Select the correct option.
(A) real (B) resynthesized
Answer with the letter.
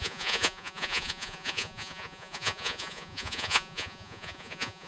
B